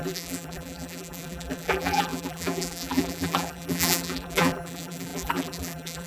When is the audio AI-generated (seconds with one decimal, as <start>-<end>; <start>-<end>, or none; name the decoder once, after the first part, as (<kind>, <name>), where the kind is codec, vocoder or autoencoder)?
0.0-6.1 (vocoder, BigVGAN v2)